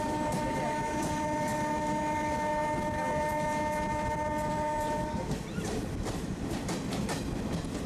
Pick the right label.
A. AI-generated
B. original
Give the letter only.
B